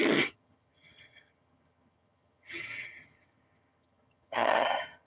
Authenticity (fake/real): fake